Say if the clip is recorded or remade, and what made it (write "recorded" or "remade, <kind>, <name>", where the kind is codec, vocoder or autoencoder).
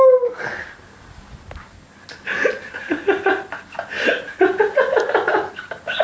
recorded